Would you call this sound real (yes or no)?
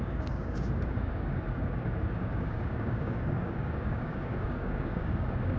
no